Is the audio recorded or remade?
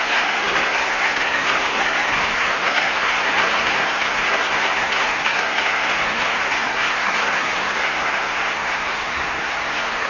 remade